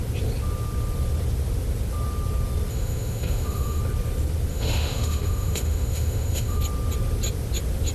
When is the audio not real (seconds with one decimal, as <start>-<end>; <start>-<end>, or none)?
2.7-3.8; 4.5-6.6